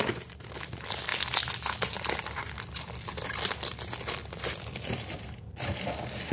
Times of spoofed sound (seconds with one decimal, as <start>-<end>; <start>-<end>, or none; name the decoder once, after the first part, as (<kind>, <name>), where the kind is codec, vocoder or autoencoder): none